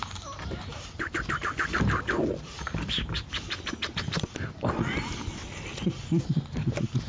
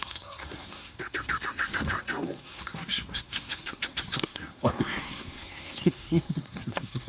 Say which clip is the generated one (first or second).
second